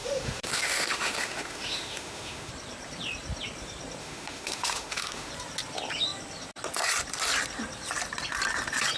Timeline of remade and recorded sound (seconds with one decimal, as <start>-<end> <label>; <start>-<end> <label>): 0.0-2.5 remade; 2.5-4.0 recorded; 4.0-5.3 remade; 5.3-9.0 recorded